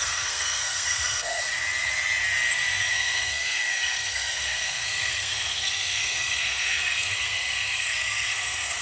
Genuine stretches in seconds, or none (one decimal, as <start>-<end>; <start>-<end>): 1.5-2.9